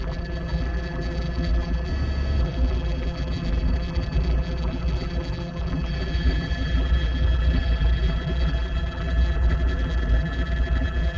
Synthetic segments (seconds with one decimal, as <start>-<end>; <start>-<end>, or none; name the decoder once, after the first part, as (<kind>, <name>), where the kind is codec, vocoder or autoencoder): 0.0-1.9 (vocoder, BigVGAN v2); 2.4-11.2